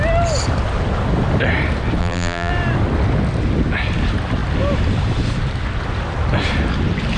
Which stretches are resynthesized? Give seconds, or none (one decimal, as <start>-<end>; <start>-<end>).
2.0-2.5